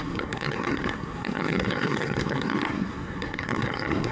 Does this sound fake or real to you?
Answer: fake